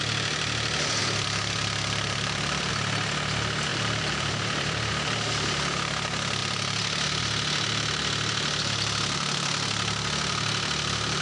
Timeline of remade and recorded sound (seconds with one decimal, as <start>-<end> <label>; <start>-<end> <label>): 0.0-1.0 recorded; 1.0-2.7 remade; 2.7-3.7 recorded; 3.7-4.9 remade; 4.9-6.4 recorded; 6.4-7.2 remade; 7.2-11.2 recorded